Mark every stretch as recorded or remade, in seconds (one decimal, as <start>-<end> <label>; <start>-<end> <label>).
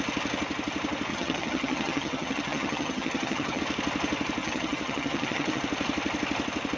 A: 0.0-1.1 recorded; 1.1-3.6 remade; 3.6-4.4 recorded; 4.4-5.6 remade; 5.6-6.8 recorded